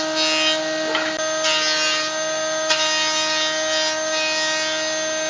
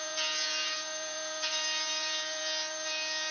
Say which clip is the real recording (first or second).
first